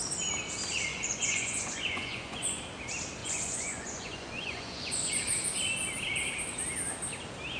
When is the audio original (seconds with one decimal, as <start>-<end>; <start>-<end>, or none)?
0.0-0.9; 2.6-3.2; 5.2-7.6